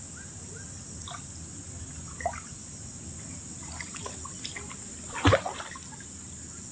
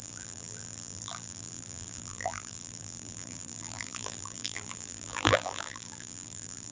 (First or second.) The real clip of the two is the first